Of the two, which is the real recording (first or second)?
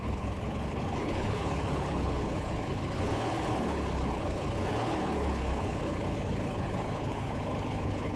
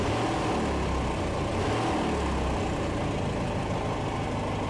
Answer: second